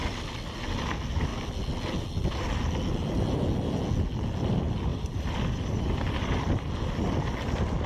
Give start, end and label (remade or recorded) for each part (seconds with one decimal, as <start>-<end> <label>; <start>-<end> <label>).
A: 0.0-4.9 recorded; 4.9-6.7 remade; 6.7-7.9 recorded